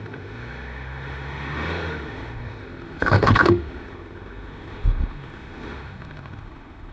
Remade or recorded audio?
remade